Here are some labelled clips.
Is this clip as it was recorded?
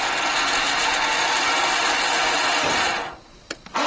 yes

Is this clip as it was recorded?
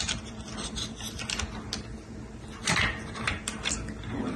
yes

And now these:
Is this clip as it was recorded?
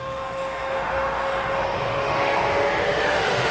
no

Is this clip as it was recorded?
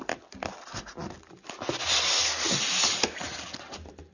yes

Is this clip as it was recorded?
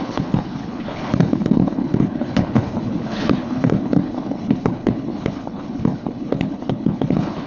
no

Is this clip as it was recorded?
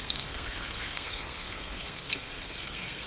no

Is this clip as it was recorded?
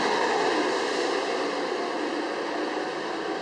yes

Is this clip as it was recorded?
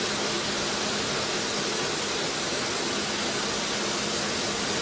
yes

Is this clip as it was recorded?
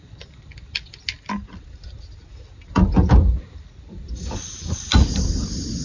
yes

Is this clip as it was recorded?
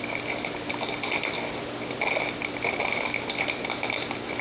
yes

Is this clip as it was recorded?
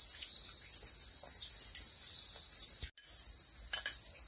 yes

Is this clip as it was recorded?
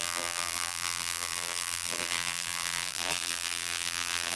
no